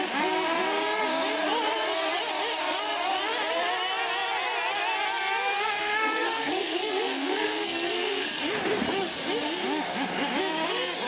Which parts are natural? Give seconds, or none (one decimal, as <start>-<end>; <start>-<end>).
0.0-5.8; 8.4-11.1